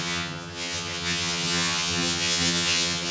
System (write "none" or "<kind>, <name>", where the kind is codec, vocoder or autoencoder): vocoder, HiFi-GAN